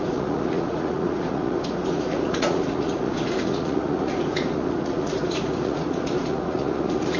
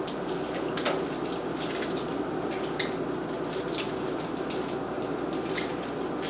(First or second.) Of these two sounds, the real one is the second